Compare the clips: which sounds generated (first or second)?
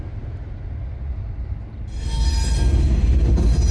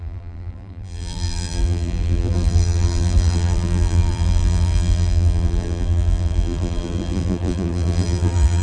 second